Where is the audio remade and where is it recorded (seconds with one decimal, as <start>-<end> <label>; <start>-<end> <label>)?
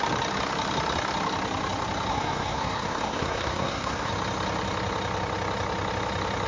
0.0-2.1 recorded; 2.1-4.1 remade; 4.1-6.5 recorded